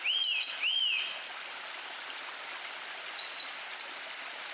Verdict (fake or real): real